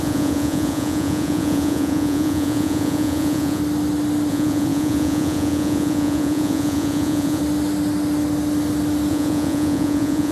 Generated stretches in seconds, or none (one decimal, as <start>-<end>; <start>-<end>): 0.0-3.6; 4.3-7.4; 9.1-10.3